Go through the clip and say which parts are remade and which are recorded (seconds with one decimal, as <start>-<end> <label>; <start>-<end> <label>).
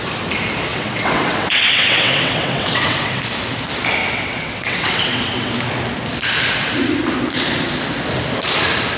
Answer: 0.0-0.7 recorded; 0.7-3.2 remade; 3.2-4.0 recorded; 4.0-5.5 remade; 5.5-9.0 recorded